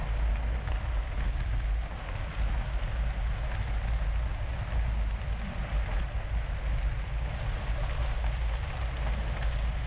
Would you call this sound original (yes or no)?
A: yes